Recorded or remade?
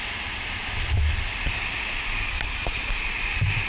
recorded